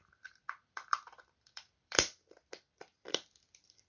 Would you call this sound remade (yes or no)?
yes